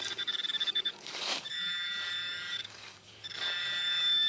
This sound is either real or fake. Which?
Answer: fake